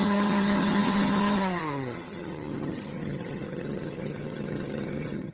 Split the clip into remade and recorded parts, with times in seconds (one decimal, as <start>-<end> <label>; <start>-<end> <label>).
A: 0.0-5.3 remade